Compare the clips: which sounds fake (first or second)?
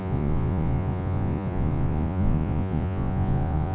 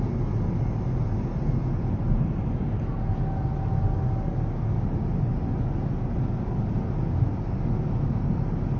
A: first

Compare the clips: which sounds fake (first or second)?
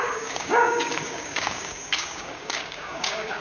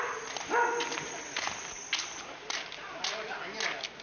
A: first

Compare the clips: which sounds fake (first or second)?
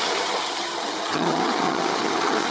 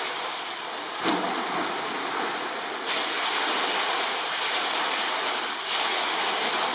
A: first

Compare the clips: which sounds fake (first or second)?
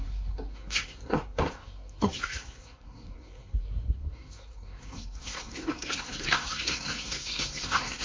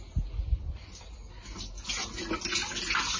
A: first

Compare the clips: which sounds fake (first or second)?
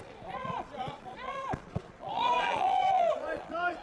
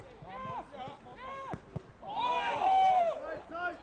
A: first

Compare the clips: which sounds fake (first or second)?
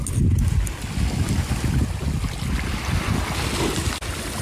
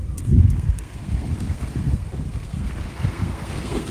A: second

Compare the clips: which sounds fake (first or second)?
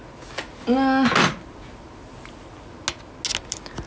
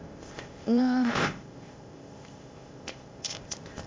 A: second